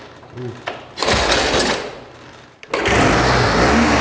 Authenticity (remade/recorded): recorded